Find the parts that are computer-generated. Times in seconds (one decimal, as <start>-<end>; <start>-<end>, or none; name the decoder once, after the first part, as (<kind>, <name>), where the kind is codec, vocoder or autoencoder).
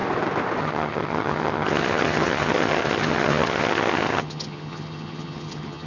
0.6-5.9 (vocoder, HiFi-GAN)